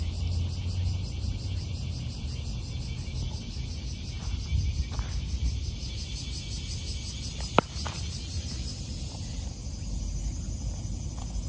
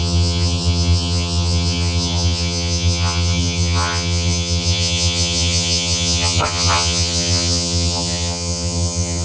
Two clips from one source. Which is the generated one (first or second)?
second